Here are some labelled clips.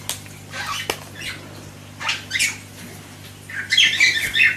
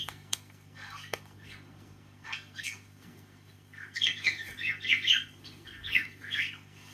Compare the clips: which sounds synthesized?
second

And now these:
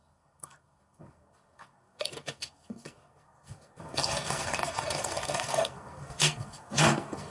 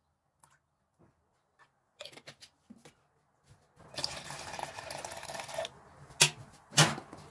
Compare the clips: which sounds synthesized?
first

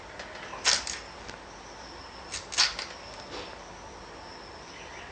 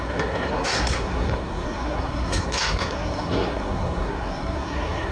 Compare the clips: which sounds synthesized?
second